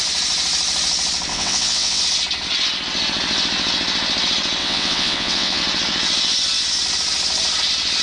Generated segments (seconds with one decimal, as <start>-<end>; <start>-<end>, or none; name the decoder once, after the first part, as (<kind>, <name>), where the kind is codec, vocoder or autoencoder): 1.3-2.0 (vocoder, WaveNeXt); 4.6-5.6